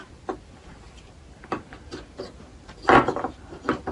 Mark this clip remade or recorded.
recorded